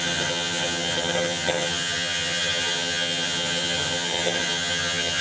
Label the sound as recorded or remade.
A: remade